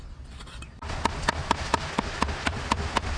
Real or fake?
real